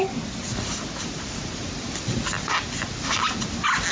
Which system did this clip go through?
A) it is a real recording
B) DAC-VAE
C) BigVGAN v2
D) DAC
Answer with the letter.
A